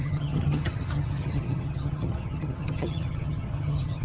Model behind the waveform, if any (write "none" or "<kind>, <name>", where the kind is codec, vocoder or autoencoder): vocoder, HiFi-GAN